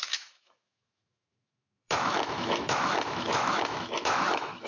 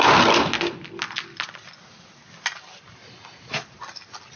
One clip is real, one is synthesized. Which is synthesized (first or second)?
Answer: first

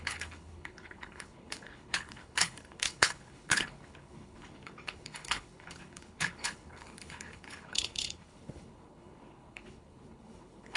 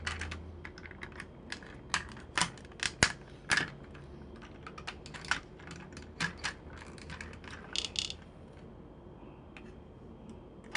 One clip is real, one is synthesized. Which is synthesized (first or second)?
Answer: first